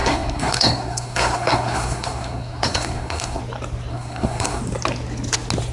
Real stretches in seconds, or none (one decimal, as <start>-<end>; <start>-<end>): 3.4-3.9; 4.6-5.7